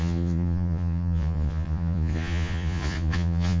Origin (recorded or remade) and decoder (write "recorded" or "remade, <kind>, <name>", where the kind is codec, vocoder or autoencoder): remade, vocoder, Vocos